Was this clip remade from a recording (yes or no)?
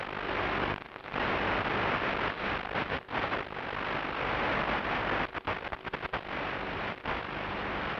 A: no